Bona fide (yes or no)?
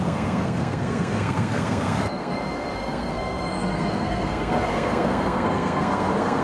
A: no